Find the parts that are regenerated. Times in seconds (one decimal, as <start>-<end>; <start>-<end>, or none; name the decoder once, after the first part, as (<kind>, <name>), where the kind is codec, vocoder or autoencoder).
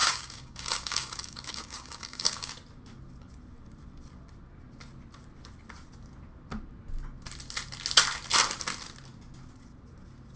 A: 0.0-2.5 (codec, DAC)